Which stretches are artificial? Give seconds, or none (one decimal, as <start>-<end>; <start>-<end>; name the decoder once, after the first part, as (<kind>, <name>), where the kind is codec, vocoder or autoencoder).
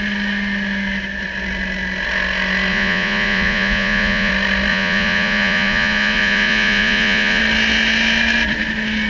2.7-4.3 (vocoder, Vocos); 4.7-7.4